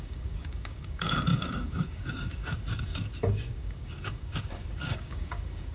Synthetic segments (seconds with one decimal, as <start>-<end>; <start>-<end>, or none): 0.0-5.7